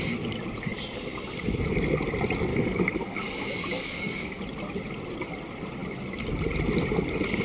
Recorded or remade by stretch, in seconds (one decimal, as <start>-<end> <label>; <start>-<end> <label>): 0.0-2.5 recorded; 2.5-4.4 remade; 4.4-7.4 recorded